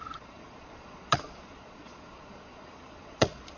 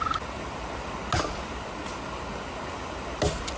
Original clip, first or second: second